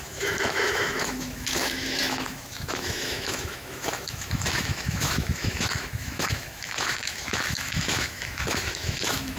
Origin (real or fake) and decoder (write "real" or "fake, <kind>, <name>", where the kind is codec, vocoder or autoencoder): fake, autoencoder, DAC-VAE